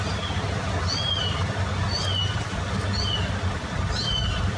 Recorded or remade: recorded